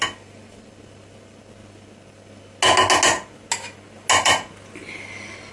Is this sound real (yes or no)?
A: yes